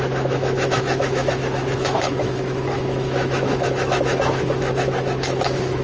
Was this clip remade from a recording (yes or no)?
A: yes